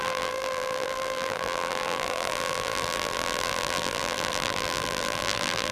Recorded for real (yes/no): no